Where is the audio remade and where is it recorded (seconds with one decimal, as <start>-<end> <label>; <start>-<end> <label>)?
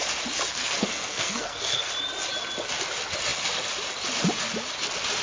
0.0-0.5 recorded; 0.5-1.9 remade; 1.9-5.2 recorded